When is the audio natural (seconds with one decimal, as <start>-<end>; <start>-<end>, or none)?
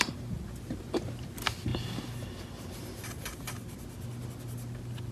0.0-5.1